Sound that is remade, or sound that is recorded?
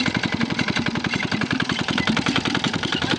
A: remade